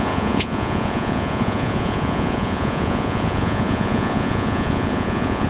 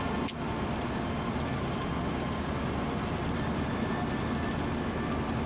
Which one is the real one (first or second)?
second